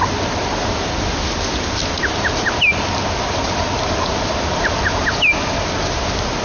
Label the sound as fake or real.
real